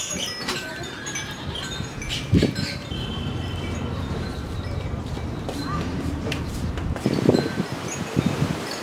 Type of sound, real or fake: fake